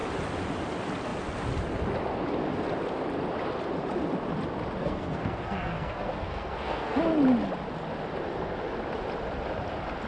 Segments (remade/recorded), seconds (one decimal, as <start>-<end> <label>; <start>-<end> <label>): 0.0-4.8 recorded; 4.8-7.0 remade; 7.0-10.1 recorded